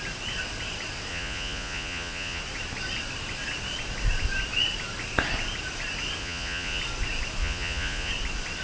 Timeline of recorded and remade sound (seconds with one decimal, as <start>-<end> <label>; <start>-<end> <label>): 0.0-1.1 recorded; 1.1-2.4 remade; 2.4-6.2 recorded; 6.2-6.8 remade; 6.8-7.4 recorded; 7.4-8.1 remade; 8.1-8.6 recorded